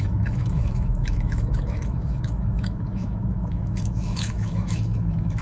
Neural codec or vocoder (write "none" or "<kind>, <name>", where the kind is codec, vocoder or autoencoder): autoencoder, DAC-VAE